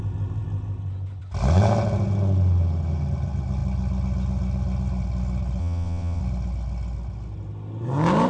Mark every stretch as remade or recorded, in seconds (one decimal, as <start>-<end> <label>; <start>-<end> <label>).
0.0-5.6 recorded; 5.6-6.2 remade; 6.2-8.3 recorded